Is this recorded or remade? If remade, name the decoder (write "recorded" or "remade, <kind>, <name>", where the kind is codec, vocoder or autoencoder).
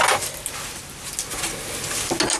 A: recorded